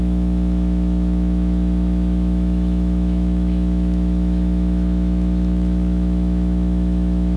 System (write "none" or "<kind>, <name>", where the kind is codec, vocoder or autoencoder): autoencoder, DAC-VAE